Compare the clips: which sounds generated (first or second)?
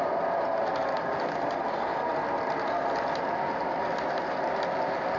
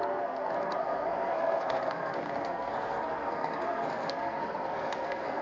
second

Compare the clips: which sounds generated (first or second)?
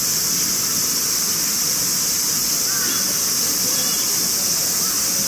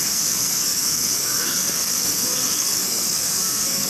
second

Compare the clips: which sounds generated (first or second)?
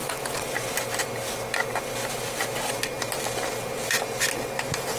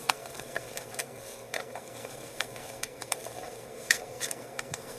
second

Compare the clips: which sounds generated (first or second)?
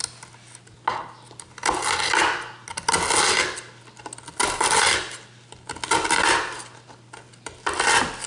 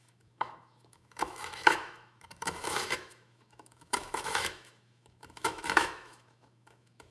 second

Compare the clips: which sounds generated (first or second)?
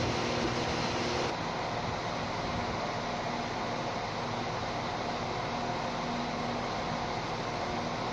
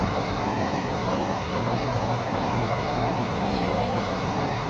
second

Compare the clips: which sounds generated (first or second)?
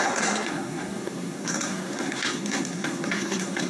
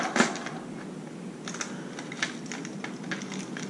first